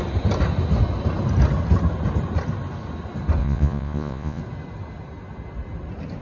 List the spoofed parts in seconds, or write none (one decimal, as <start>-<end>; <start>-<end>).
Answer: 3.4-4.4